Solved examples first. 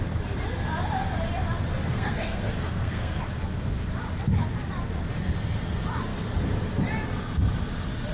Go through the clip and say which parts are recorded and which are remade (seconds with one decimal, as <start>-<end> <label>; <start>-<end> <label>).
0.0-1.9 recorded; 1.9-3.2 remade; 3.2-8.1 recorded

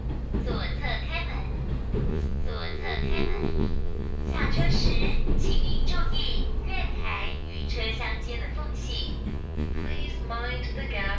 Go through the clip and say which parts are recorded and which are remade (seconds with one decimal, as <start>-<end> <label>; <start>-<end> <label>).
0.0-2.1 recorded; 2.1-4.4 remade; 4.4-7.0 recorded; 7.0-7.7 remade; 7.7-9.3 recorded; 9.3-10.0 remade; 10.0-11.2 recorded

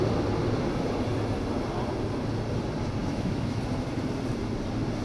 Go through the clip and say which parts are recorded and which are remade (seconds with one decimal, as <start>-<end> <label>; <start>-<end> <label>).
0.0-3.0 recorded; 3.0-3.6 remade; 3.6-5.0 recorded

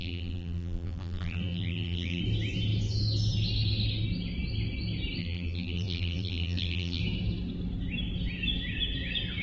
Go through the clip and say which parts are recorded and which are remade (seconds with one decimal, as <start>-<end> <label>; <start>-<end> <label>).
0.0-2.2 remade; 2.2-5.2 recorded; 5.2-7.0 remade; 7.0-9.4 recorded

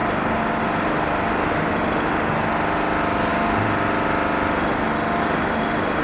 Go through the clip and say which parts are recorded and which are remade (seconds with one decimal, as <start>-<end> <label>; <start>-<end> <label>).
0.0-6.0 recorded

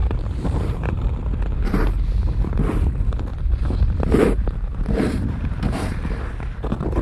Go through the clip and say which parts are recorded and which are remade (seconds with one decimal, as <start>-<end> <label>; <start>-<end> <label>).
0.0-1.1 remade; 1.1-3.3 recorded; 3.3-5.9 remade; 5.9-7.0 recorded